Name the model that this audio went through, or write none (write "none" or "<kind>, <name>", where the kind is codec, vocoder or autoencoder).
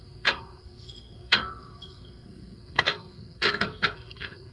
codec, SNAC